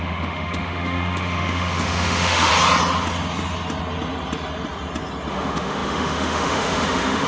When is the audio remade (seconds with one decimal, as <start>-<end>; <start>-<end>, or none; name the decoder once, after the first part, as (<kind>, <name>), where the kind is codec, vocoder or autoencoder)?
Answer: 0.0-2.5 (autoencoder, DAC-VAE); 5.3-7.3